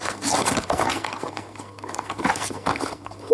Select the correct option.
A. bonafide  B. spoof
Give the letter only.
B